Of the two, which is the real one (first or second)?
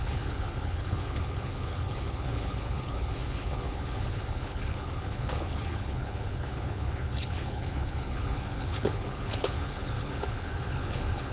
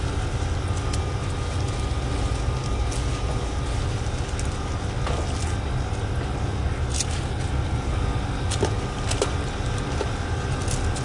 second